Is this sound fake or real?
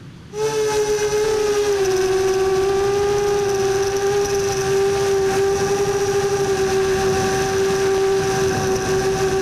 real